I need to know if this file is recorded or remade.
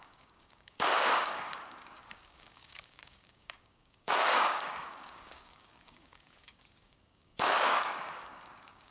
remade